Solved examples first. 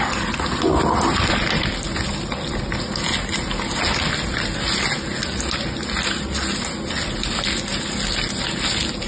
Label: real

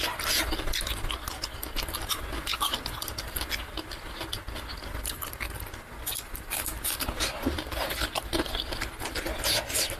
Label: real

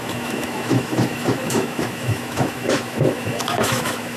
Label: fake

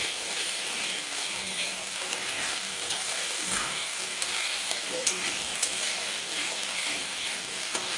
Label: fake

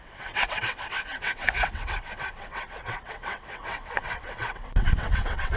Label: fake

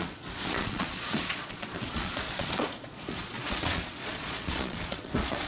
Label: fake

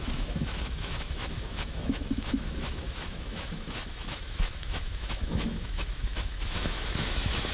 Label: fake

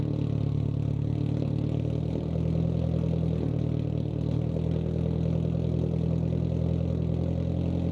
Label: real